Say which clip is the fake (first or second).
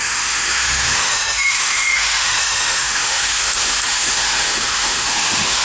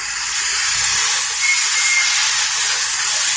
first